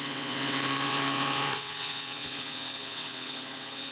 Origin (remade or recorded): remade